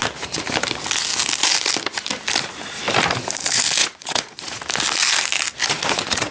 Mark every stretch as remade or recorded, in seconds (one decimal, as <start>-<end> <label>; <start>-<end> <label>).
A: 0.0-3.8 recorded; 3.8-4.6 remade; 4.6-5.6 recorded; 5.6-6.3 remade